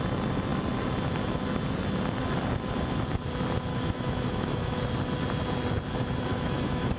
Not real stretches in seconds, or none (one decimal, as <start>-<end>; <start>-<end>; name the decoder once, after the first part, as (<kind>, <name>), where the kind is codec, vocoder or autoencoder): 3.7-4.8 (autoencoder, DAC-VAE); 6.3-7.0